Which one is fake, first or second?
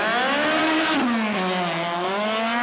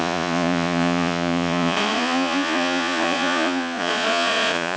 second